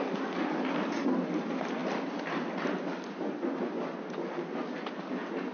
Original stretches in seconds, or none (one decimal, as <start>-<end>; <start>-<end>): 0.0-5.5